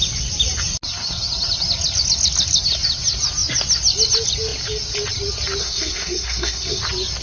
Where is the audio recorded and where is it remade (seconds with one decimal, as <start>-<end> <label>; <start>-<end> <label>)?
0.0-5.6 recorded; 5.6-6.8 remade; 6.8-7.2 recorded